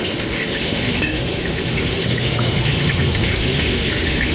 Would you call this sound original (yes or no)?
no